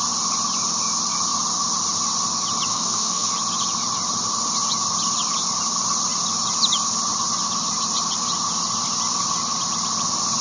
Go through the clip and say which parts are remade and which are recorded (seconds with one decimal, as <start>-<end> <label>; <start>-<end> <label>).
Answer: 0.0-2.7 recorded; 2.7-3.3 remade; 3.3-10.4 recorded